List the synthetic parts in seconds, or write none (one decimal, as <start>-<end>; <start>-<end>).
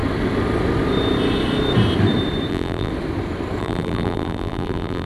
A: 2.5-2.9; 3.6-5.1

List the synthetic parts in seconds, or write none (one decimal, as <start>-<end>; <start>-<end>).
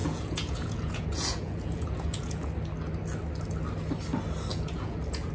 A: 0.0-2.5; 4.5-5.3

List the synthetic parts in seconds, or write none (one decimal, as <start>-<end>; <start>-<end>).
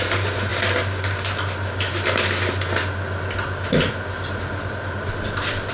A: none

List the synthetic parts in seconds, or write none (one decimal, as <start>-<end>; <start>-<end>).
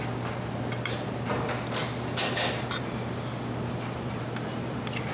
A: none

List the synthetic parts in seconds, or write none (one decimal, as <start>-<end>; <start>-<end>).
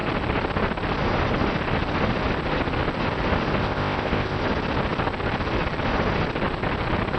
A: 3.6-4.4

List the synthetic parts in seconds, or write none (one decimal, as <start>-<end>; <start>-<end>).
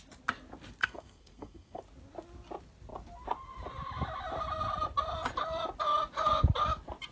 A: 0.8-1.8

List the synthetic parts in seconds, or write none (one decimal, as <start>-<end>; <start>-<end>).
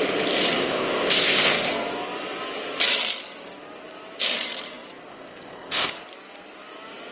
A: 0.6-1.7; 5.1-5.9